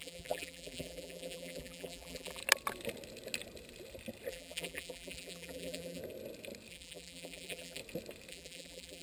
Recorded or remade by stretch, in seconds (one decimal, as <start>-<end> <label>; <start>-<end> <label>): 0.0-2.4 remade; 2.4-4.3 recorded; 4.3-6.0 remade; 6.0-6.7 recorded; 6.7-7.8 remade; 7.8-8.3 recorded; 8.3-9.0 remade